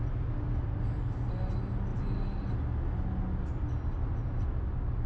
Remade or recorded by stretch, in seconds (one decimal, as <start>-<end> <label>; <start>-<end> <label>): 0.0-5.1 recorded